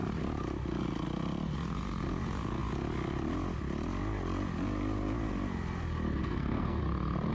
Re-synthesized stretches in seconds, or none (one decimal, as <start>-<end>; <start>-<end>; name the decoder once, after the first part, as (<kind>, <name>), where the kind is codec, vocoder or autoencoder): 6.2-6.8 (codec, SNAC)